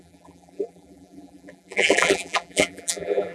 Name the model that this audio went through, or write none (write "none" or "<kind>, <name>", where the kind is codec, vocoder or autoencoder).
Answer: vocoder, BigVGAN v2